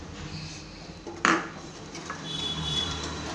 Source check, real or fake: fake